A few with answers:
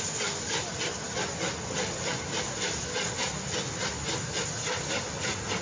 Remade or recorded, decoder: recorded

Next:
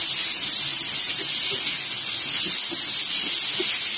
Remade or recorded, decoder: recorded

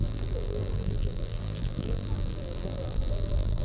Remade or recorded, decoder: remade, vocoder, BigVGAN v2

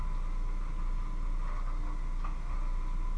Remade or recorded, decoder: recorded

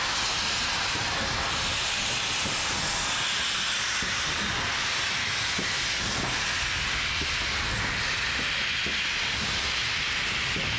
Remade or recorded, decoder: recorded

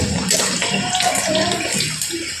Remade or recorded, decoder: recorded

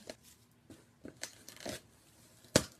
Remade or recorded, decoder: recorded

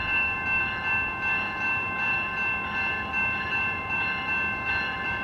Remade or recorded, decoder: recorded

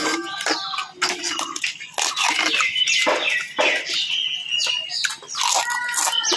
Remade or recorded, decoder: recorded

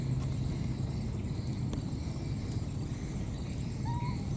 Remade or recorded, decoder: recorded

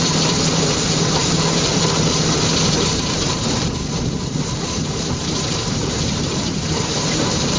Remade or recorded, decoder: remade, vocoder, BigVGAN v2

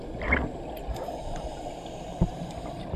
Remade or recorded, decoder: recorded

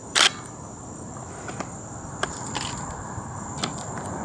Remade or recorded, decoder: remade, vocoder, BigVGAN v2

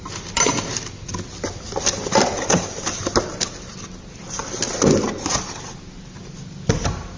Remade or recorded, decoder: recorded